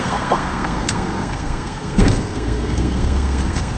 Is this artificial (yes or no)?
yes